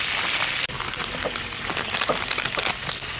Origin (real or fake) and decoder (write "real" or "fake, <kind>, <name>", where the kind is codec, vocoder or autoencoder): real